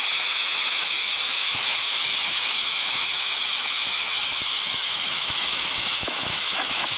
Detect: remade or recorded remade